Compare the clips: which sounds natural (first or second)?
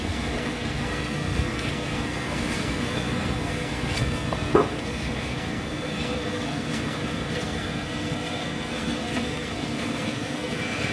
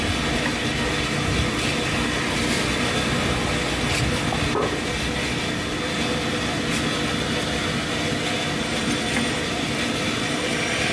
second